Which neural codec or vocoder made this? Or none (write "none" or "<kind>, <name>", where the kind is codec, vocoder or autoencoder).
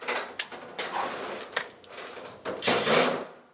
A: none